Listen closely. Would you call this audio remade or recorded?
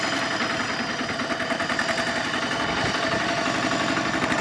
recorded